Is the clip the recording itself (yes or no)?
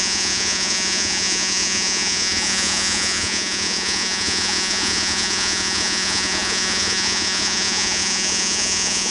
no